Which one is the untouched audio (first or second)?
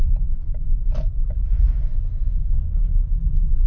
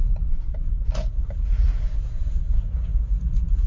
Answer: first